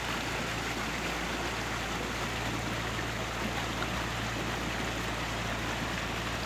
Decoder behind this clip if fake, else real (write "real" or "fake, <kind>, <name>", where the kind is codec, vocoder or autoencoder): real